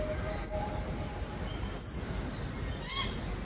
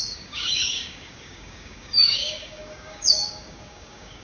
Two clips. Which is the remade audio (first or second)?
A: second